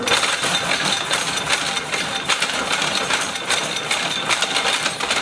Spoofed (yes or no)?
yes